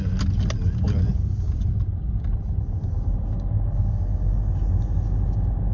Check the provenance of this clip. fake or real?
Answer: real